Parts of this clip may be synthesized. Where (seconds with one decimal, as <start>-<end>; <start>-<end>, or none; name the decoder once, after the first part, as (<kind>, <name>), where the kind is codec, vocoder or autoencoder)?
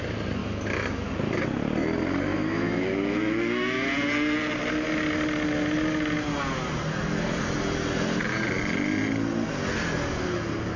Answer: 0.4-1.1 (autoencoder, DAC-VAE); 2.3-3.9